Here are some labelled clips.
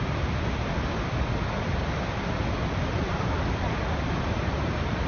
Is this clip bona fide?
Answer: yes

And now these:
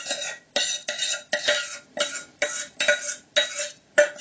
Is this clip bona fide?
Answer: yes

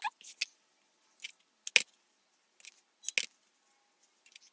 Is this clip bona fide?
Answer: yes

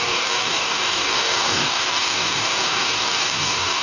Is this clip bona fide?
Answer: no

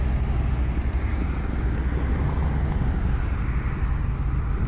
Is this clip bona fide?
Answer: yes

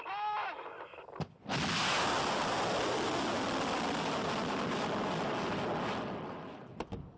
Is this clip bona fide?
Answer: yes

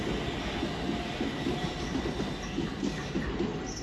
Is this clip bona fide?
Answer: yes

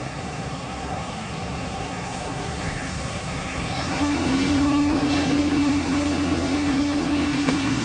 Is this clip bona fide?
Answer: no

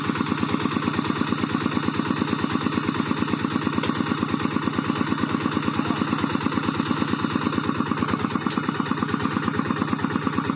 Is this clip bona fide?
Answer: yes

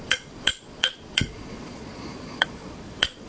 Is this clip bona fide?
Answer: no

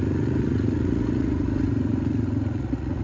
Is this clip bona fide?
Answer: no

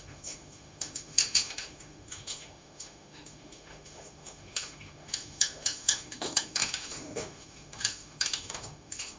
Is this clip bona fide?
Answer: no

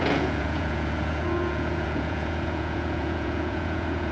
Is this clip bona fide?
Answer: no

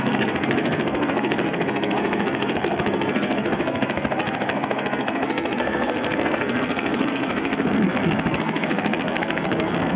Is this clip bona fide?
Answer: no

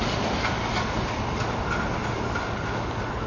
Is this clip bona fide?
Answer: yes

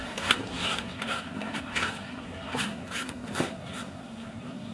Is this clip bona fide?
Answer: no